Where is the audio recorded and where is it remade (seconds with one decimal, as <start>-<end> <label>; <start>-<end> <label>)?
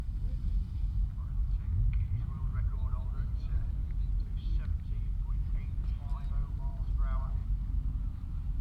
0.0-3.8 remade; 3.8-5.9 recorded; 5.9-7.4 remade; 7.4-8.1 recorded; 8.1-8.6 remade